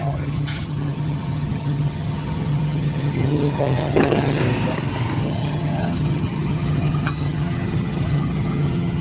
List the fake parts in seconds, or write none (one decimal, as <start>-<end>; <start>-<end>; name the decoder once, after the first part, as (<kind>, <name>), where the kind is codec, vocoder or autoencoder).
0.0-4.4 (vocoder, HiFi-GAN); 5.2-9.0